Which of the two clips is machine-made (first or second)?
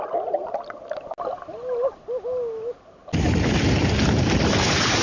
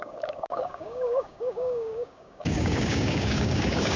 second